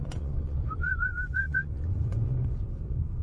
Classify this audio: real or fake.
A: fake